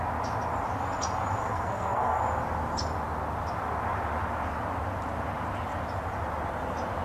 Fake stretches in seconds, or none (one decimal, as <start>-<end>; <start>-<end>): 1.4-2.2